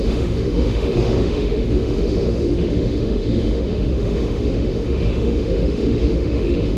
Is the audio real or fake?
fake